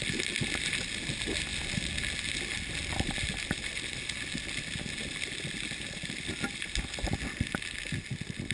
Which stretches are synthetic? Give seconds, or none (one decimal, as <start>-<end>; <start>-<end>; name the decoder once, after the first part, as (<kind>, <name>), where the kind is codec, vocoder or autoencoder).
none